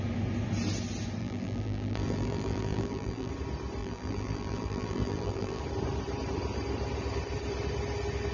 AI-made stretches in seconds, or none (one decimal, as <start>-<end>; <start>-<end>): 1.2-3.3; 3.8-5.6